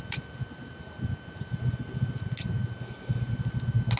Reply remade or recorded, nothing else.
recorded